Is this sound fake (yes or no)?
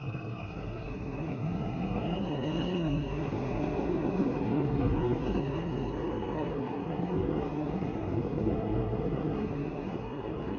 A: yes